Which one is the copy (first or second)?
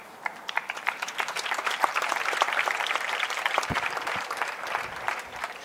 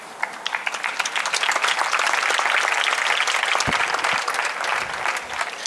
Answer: first